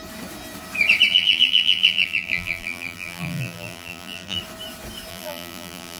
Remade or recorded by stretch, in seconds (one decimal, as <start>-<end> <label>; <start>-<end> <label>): 0.0-1.1 recorded; 1.1-4.4 remade; 4.4-5.1 recorded; 5.1-6.0 remade